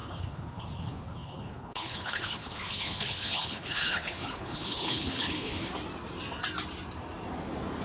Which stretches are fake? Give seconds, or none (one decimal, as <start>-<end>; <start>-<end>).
0.0-5.7